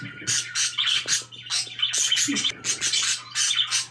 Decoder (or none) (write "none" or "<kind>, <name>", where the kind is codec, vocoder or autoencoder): none